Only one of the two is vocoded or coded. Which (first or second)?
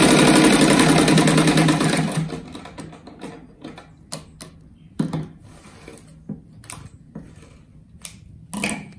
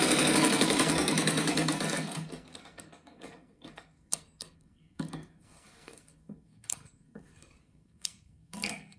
second